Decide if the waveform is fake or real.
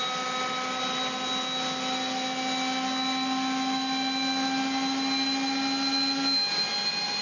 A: real